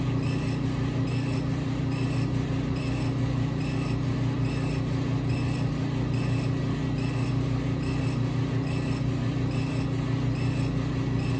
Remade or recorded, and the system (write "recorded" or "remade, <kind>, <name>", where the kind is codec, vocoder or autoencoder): recorded